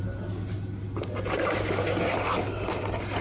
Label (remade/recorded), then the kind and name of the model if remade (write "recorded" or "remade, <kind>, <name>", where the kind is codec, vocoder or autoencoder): recorded